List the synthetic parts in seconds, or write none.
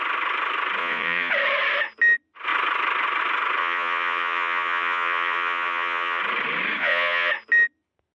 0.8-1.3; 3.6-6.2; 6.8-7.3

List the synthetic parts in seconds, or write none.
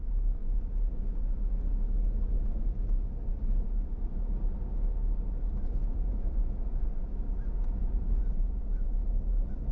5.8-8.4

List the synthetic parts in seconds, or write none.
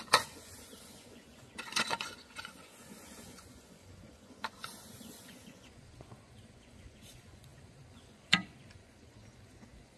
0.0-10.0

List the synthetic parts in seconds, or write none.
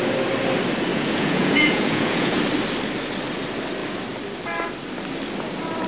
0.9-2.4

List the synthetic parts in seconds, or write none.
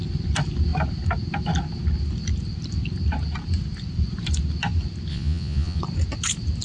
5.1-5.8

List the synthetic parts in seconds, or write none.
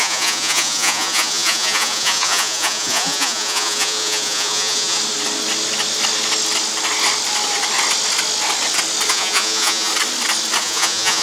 0.0-5.0; 9.1-9.9; 10.6-11.2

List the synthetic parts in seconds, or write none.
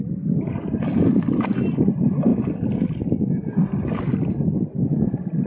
none